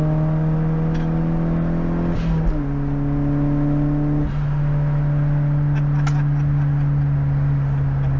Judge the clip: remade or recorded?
recorded